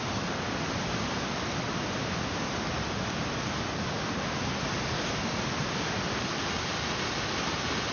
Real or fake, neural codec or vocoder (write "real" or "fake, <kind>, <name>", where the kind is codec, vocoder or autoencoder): real